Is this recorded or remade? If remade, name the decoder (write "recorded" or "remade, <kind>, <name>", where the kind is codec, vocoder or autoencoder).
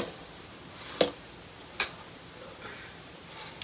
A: recorded